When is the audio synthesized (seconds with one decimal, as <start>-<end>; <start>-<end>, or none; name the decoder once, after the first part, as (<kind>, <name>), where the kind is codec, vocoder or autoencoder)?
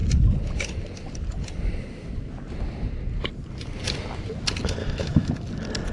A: 4.8-5.3 (autoencoder, DAC-VAE)